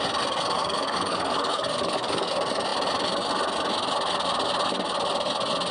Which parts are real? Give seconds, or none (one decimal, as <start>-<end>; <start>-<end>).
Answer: 0.0-0.6; 2.3-5.7

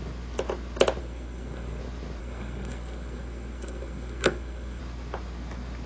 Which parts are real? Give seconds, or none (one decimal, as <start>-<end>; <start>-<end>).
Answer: 0.0-1.0; 1.8-2.2; 4.8-5.9

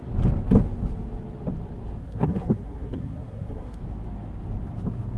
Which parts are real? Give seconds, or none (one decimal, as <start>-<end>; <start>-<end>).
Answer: 0.0-2.0; 3.8-5.2

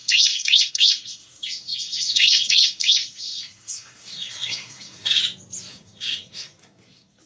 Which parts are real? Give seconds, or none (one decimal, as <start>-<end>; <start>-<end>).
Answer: 5.2-5.7